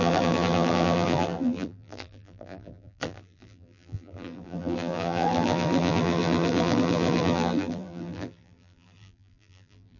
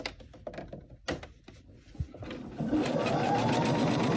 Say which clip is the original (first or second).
second